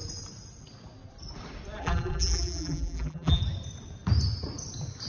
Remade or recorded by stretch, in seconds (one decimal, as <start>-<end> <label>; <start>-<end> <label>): 0.0-1.8 recorded; 1.8-3.4 remade; 3.4-5.1 recorded

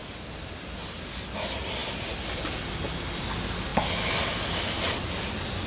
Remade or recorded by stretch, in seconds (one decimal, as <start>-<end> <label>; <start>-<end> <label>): 0.0-5.7 recorded

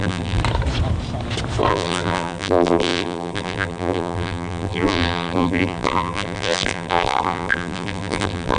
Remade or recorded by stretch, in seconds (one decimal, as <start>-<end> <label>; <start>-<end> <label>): 0.0-0.4 remade; 0.4-1.7 recorded; 1.7-8.6 remade

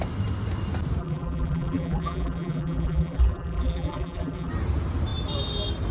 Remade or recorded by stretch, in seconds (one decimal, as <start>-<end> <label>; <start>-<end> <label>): 0.0-1.0 recorded; 1.0-4.5 remade; 4.5-5.9 recorded

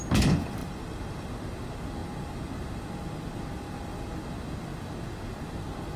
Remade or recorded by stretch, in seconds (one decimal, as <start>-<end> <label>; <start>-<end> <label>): 0.0-0.6 recorded; 0.6-1.3 remade; 1.3-6.0 recorded